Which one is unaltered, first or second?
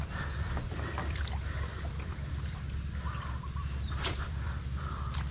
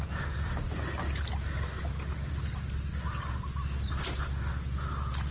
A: second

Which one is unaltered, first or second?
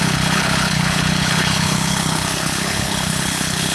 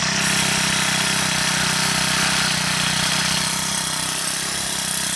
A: second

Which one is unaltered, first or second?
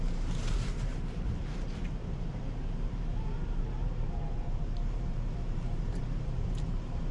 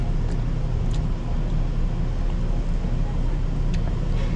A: second